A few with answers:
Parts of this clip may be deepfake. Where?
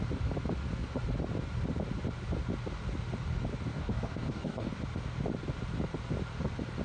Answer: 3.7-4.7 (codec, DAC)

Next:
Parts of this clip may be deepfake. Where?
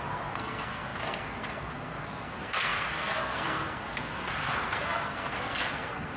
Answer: 0.0-6.2 (codec, SNAC)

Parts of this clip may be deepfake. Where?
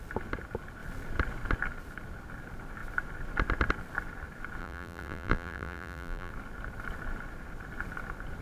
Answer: 4.6-6.3 (vocoder, BigVGAN v2)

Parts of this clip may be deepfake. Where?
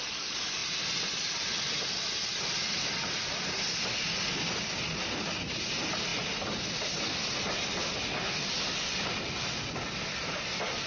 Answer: none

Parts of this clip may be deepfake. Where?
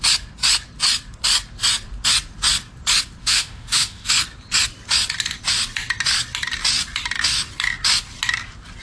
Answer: 3.2-4.1 (autoencoder, DAC-VAE)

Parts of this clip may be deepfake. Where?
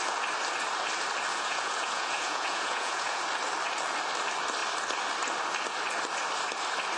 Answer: 1.3-3.2 (vocoder, Vocos)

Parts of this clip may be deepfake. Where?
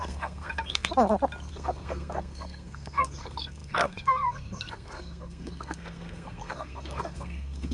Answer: 0.0-0.9 (codec, SNAC); 1.5-7.7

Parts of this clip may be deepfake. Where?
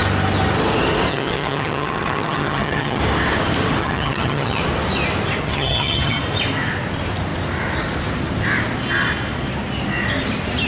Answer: 1.1-3.0 (vocoder, HiFi-GAN); 3.8-4.6; 5.4-6.2